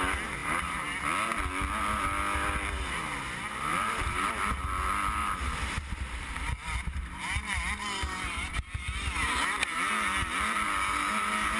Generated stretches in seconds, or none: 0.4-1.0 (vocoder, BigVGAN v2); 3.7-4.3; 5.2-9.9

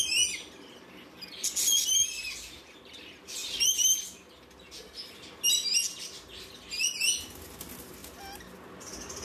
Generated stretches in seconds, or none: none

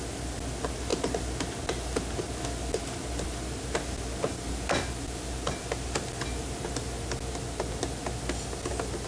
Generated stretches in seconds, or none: none